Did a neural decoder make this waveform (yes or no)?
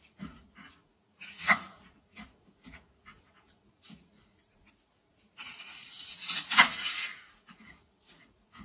yes